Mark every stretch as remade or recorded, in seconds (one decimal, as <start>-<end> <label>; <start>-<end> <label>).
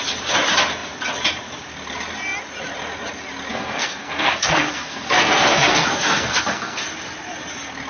0.0-3.5 recorded; 3.5-6.8 remade; 6.8-7.9 recorded